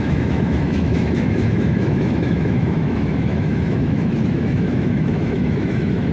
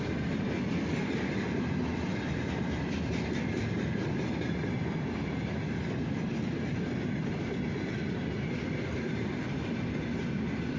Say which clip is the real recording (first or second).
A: second